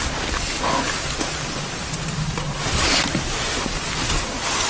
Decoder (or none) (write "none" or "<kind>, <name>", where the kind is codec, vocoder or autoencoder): none